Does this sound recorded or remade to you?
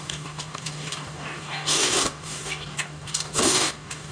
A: remade